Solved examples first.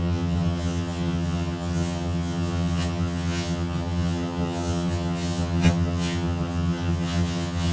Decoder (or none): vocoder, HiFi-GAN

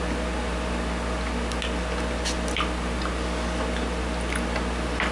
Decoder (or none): none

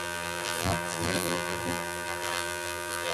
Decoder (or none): vocoder, BigVGAN v2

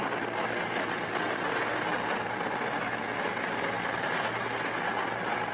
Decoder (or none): none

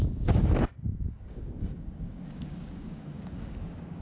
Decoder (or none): codec, DAC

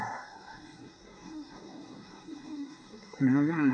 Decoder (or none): codec, SNAC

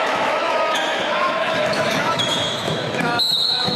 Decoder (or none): autoencoder, DAC-VAE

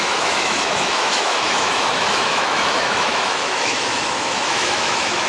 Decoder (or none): autoencoder, DAC-VAE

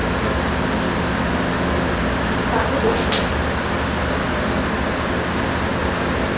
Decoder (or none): none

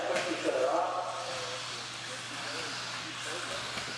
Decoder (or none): none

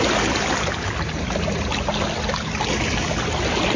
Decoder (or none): none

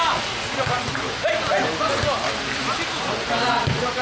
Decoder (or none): none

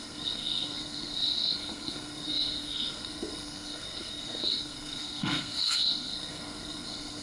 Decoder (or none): codec, SNAC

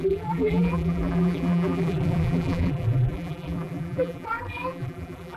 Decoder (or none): vocoder, BigVGAN v2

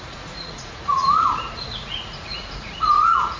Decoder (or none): vocoder, Vocos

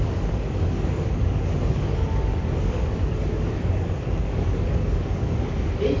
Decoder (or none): codec, DAC